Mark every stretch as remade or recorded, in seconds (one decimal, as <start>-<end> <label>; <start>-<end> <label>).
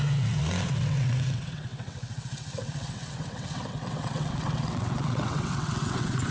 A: 0.0-6.3 remade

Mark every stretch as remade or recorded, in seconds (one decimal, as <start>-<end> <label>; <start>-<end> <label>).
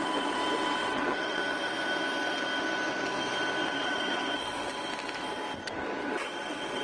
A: 0.0-0.8 recorded; 0.8-1.4 remade; 1.4-3.6 recorded; 3.6-4.7 remade; 4.7-6.0 recorded; 6.0-6.8 remade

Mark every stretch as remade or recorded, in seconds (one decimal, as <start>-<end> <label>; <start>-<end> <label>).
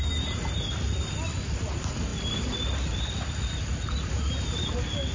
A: 0.0-5.1 recorded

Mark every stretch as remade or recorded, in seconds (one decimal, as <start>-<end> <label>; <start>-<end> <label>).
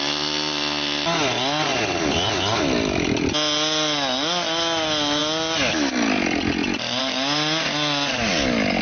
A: 0.0-8.8 recorded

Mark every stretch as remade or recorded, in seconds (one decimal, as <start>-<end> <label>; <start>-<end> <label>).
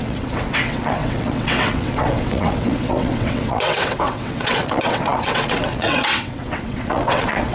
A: 0.0-7.5 remade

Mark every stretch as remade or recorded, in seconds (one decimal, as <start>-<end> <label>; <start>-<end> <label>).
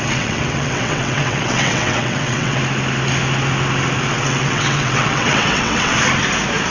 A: 0.0-2.6 remade; 2.6-4.1 recorded; 4.1-5.9 remade; 5.9-6.7 recorded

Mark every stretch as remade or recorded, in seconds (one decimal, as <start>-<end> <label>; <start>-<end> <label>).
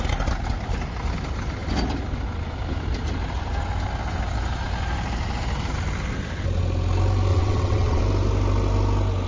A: 0.0-7.3 recorded; 7.3-8.0 remade; 8.0-9.3 recorded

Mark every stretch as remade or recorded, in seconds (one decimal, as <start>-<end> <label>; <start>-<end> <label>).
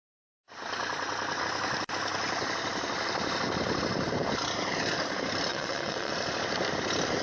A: 0.0-5.5 recorded; 5.5-6.1 remade; 6.1-7.2 recorded